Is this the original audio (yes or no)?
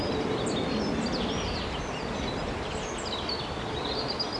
yes